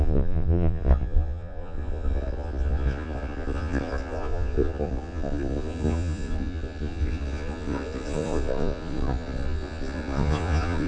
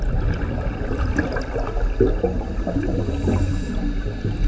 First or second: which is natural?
second